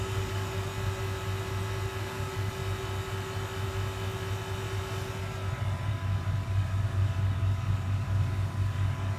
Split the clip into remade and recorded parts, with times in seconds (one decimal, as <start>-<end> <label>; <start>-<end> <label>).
0.0-0.7 remade; 0.7-2.0 recorded; 2.0-2.6 remade; 2.6-5.9 recorded; 5.9-9.2 remade